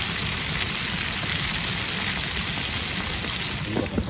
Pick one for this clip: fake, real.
real